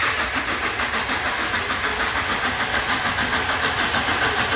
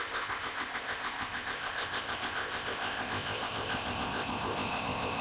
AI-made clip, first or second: second